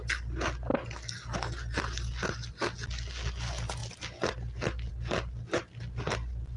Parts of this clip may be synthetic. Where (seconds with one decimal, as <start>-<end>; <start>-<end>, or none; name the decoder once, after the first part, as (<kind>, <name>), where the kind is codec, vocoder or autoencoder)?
none